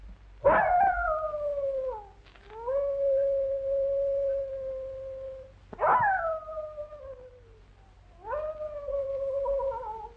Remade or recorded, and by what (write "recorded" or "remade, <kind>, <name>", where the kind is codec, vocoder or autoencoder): recorded